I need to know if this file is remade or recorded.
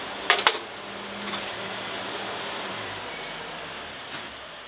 remade